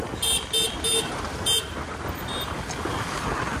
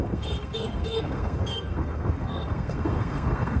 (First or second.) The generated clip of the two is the second